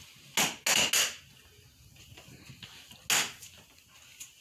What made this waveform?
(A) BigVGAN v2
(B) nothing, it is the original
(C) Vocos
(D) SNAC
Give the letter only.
B